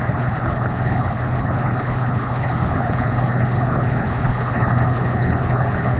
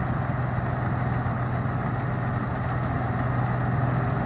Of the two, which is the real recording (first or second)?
second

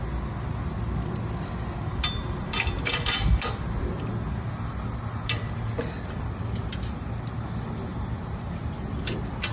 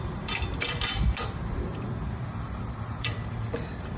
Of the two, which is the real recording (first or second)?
first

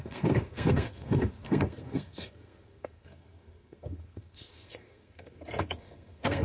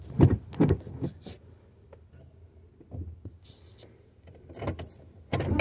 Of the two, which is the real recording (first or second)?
second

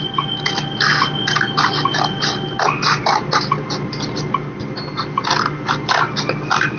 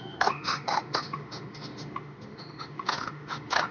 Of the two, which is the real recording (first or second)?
first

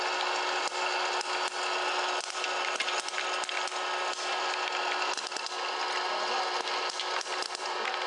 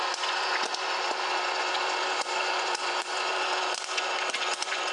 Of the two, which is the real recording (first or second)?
first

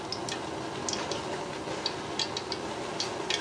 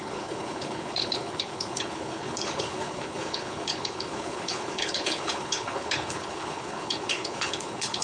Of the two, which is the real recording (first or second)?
first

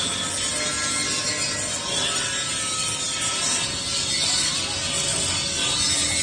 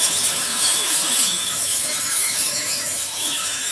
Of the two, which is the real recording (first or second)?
first